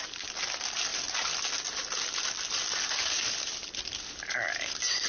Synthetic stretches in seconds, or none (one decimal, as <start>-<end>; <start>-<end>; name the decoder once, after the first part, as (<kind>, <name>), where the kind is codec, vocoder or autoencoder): none

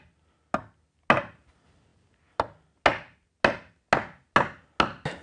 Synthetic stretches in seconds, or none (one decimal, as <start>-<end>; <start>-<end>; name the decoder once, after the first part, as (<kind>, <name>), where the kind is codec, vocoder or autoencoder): none